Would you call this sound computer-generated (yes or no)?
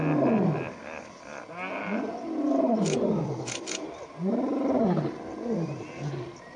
no